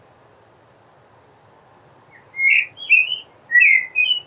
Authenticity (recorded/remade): recorded